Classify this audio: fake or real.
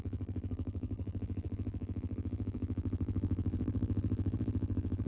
fake